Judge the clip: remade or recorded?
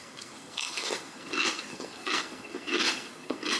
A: remade